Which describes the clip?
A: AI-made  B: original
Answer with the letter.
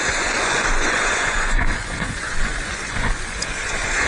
A